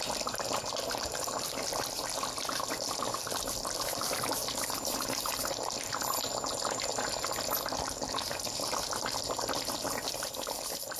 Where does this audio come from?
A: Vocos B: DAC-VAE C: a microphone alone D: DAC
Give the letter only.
C